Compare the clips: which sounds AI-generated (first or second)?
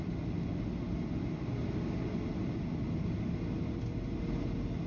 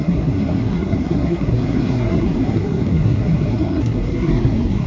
second